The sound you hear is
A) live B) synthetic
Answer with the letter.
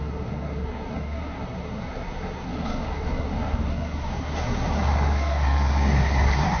B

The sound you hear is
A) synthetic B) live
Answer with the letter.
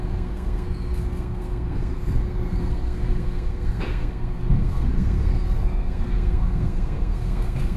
A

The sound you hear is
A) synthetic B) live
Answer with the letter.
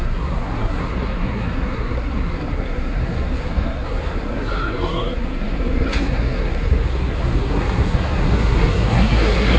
A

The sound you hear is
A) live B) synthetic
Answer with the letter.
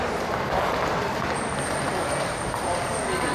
A